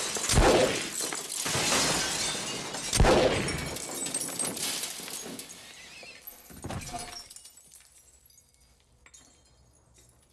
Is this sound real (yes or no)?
yes